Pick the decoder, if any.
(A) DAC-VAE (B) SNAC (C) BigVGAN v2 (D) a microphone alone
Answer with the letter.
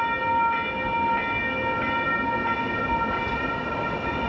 D